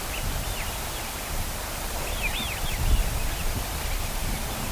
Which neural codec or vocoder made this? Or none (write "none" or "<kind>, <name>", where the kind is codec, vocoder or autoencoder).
none